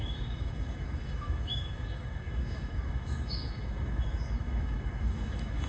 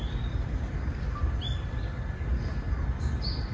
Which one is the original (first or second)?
second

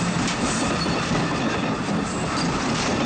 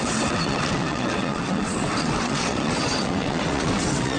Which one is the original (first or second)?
first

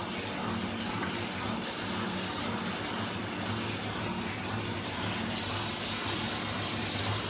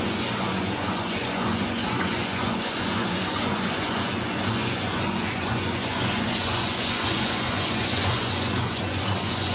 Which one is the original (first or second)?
first